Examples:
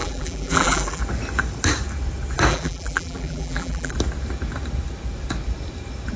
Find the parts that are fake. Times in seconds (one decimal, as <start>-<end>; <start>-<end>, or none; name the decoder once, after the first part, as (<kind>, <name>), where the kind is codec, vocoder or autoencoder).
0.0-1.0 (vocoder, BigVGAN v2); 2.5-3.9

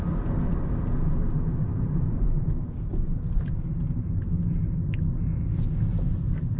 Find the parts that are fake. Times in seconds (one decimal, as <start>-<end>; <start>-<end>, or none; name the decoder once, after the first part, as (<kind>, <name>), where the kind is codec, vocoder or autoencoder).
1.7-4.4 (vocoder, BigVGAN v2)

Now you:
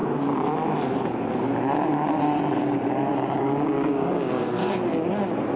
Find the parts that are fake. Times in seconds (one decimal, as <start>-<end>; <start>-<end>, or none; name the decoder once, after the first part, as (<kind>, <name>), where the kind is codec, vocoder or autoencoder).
3.4-4.6 (codec, DAC)

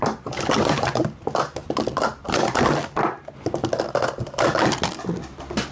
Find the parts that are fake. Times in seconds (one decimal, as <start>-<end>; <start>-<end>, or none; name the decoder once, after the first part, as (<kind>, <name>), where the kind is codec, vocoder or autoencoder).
none

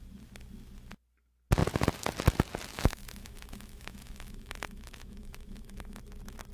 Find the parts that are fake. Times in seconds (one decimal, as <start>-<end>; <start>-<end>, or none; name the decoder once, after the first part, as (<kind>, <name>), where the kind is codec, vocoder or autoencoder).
2.7-6.0 (autoencoder, DAC-VAE)

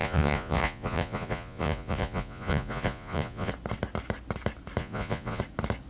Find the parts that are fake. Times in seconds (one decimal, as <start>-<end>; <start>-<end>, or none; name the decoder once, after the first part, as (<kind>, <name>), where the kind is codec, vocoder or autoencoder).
0.0-3.5 (vocoder, Vocos); 4.8-5.4

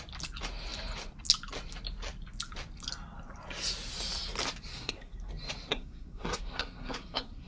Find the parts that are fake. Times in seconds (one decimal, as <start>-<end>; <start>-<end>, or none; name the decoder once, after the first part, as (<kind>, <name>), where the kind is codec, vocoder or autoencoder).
4.7-5.3 (codec, SNAC); 5.7-7.5

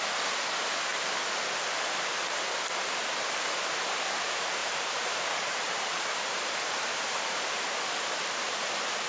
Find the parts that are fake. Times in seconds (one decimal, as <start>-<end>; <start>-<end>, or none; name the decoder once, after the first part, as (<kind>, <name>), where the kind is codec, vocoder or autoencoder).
4.6-7.5 (vocoder, BigVGAN v2)